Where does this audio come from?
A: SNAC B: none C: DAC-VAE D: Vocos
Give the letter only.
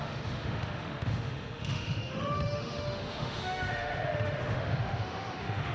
C